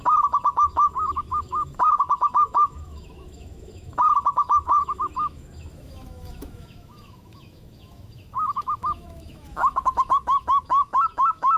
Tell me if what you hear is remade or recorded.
remade